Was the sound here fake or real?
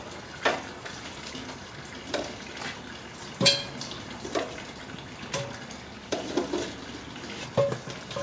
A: real